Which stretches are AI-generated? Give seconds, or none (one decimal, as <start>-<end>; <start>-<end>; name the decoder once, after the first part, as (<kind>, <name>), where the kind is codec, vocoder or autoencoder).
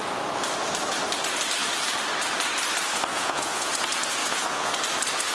3.1-3.7 (vocoder, Vocos); 4.2-4.7